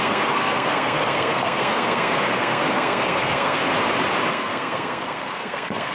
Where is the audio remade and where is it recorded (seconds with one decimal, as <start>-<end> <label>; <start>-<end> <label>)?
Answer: 0.0-3.6 remade; 3.6-4.3 recorded; 4.3-5.9 remade